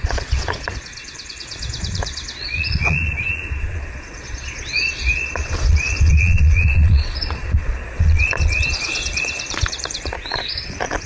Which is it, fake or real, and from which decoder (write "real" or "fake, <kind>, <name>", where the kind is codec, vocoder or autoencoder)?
fake, vocoder, Vocos